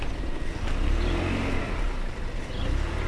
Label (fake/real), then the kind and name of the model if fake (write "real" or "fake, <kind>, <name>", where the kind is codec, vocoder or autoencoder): real